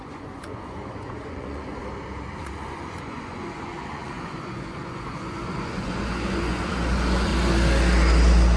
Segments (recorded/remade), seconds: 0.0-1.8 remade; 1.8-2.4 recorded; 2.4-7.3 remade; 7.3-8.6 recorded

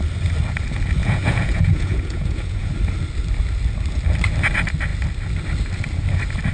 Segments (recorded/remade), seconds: 0.0-1.0 recorded; 1.0-2.7 remade; 2.7-6.5 recorded